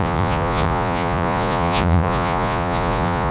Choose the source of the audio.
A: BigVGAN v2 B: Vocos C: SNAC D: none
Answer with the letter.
B